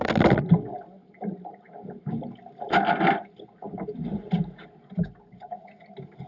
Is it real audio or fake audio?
real